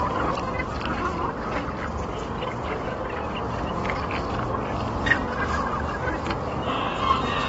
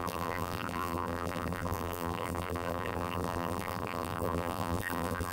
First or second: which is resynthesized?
second